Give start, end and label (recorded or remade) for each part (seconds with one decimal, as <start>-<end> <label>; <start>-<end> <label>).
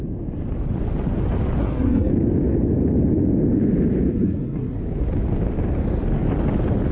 0.0-1.6 recorded; 1.6-2.1 remade; 2.1-4.1 recorded; 4.1-4.8 remade; 4.8-6.9 recorded